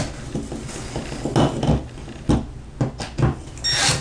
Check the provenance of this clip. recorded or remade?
recorded